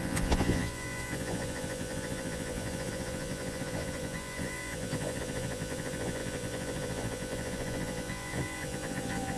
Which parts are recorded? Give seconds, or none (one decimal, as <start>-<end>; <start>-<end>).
none